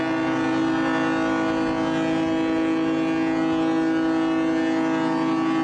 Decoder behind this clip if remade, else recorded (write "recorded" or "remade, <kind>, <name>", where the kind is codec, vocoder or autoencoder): recorded